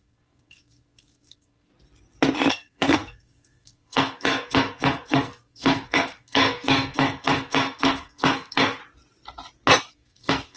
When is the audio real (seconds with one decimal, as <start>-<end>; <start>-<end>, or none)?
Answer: 1.7-2.5; 8.8-9.9